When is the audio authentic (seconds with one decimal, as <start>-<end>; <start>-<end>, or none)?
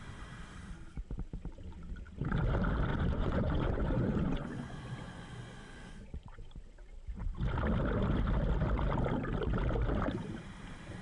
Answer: 0.0-2.9; 6.4-11.0